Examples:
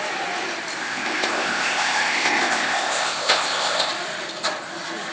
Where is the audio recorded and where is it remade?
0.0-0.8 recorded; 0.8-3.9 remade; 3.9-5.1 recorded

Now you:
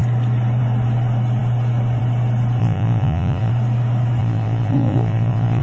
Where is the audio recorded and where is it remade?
0.0-2.6 recorded; 2.6-3.5 remade; 3.5-4.2 recorded; 4.2-5.6 remade

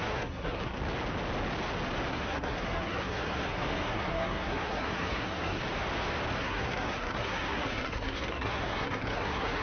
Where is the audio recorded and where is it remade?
0.0-0.8 remade; 0.8-2.1 recorded; 2.1-5.6 remade; 5.6-6.4 recorded; 6.4-9.6 remade

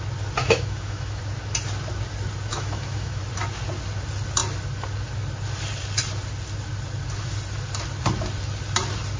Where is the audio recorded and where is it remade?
0.0-0.4 recorded; 0.4-1.2 remade; 1.2-2.5 recorded; 2.5-3.2 remade; 3.2-9.2 recorded

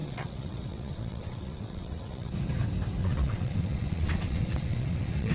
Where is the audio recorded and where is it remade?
0.0-2.3 remade; 2.3-3.0 recorded; 3.0-5.3 remade

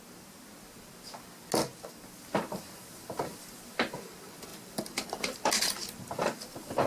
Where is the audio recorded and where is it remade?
0.0-4.5 recorded; 4.5-6.0 remade; 6.0-6.9 recorded

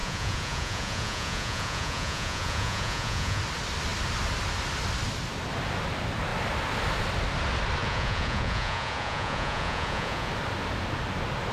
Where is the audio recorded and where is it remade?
0.0-3.4 remade; 3.4-7.8 recorded; 7.8-10.3 remade; 10.3-11.5 recorded